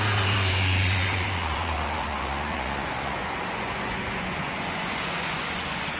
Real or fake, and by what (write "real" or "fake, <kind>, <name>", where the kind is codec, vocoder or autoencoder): fake, vocoder, Vocos